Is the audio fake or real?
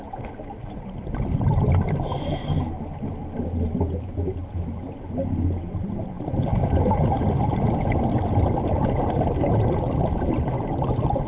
real